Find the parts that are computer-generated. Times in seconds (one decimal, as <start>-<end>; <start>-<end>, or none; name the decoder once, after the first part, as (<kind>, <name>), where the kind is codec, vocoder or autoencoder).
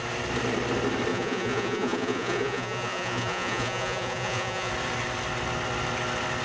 1.1-4.7 (vocoder, Vocos)